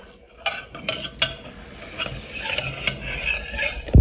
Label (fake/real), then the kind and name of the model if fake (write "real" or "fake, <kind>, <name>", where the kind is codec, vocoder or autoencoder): real